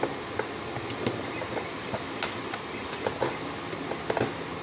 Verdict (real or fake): real